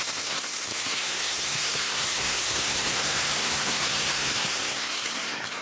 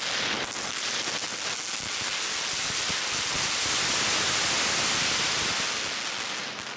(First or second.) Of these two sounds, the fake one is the first